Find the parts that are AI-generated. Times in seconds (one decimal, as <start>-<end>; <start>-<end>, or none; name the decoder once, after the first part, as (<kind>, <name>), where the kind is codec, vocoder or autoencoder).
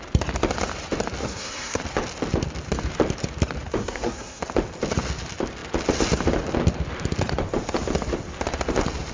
1.2-1.8 (codec, SNAC); 3.8-4.4